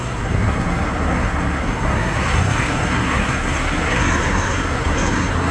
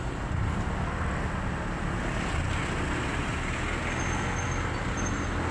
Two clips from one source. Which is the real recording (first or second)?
second